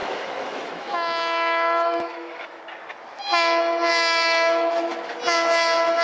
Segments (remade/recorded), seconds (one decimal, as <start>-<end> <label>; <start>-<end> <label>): 0.0-2.6 remade; 2.6-3.9 recorded; 3.9-4.9 remade; 4.9-6.0 recorded